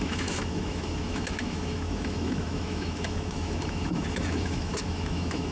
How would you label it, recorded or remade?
remade